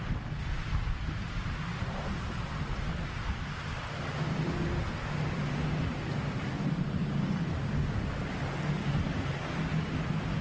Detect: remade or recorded recorded